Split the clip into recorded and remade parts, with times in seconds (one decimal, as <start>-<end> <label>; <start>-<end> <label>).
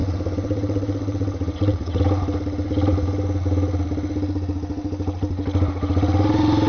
0.0-2.0 remade; 2.0-6.7 recorded